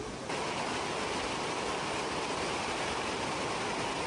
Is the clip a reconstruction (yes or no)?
no